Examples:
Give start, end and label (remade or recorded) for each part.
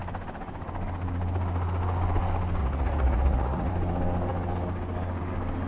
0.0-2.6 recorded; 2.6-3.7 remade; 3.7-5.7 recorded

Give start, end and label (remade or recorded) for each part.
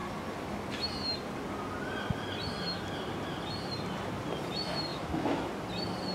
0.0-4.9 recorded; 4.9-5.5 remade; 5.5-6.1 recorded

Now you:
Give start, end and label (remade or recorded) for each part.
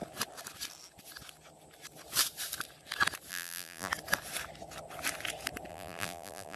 0.0-3.3 recorded; 3.3-3.9 remade; 3.9-5.7 recorded; 5.7-6.6 remade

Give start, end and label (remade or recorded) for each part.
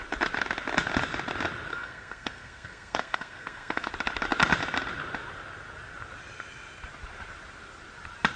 0.0-1.7 recorded; 1.7-3.9 remade; 3.9-8.4 recorded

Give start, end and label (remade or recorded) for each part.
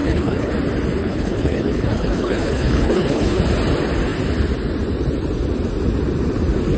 0.0-0.5 remade; 0.5-1.0 recorded; 1.0-3.4 remade; 3.4-6.8 recorded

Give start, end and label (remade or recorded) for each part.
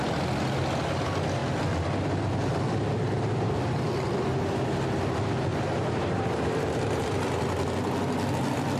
0.0-5.5 recorded; 5.5-6.6 remade; 6.6-8.8 recorded